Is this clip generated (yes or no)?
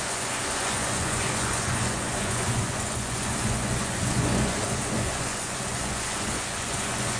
yes